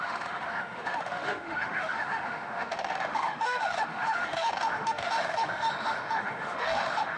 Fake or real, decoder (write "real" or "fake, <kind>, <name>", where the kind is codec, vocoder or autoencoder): fake, autoencoder, DAC-VAE